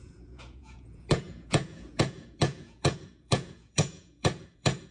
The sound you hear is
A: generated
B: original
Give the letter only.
A